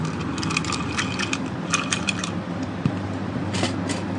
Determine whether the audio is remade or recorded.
recorded